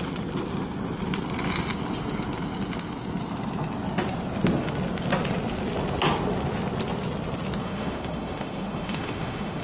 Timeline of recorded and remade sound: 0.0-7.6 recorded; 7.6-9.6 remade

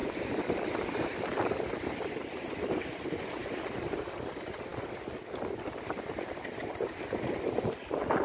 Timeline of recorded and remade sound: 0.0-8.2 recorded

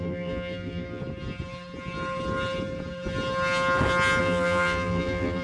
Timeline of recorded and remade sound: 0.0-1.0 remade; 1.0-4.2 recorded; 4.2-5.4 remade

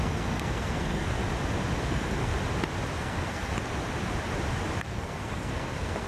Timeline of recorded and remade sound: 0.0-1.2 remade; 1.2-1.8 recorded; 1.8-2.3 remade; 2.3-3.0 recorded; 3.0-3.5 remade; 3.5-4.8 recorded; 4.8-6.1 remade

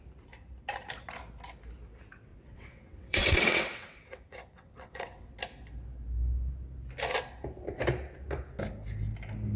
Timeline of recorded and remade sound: 0.0-2.3 recorded; 2.3-5.3 remade; 5.3-9.6 recorded

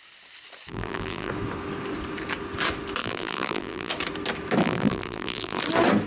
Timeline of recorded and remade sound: 0.0-0.7 recorded; 0.7-1.3 remade; 1.3-3.0 recorded; 3.0-3.9 remade; 3.9-4.6 recorded; 4.6-5.6 remade; 5.6-6.1 recorded